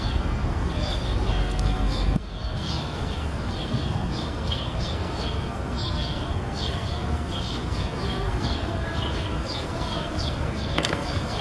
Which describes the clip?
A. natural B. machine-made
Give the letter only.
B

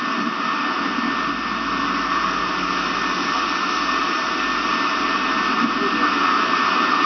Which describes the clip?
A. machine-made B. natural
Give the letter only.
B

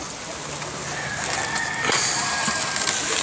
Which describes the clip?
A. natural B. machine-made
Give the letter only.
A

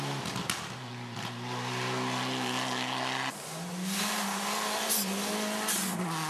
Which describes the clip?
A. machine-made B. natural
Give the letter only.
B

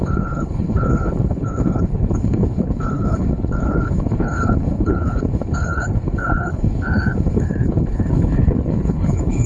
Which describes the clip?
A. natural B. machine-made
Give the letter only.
B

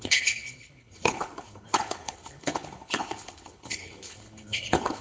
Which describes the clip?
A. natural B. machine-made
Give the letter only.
B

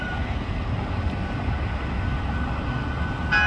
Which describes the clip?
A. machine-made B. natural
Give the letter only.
B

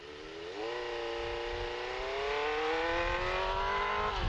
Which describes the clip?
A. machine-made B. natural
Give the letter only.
B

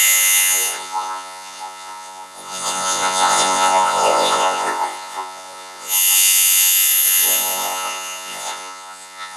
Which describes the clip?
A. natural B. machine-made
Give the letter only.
B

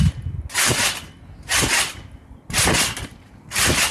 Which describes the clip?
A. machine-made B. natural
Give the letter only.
B